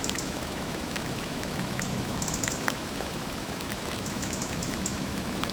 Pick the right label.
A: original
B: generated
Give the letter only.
B